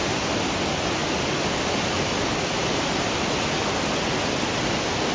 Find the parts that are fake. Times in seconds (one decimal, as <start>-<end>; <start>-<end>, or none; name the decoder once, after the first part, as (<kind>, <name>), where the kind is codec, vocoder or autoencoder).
none